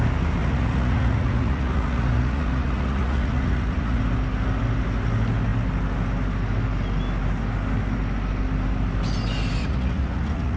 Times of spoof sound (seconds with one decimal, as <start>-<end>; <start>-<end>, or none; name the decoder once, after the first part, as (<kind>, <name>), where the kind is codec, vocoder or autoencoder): 0.4-4.0 (vocoder, Vocos); 9.6-10.6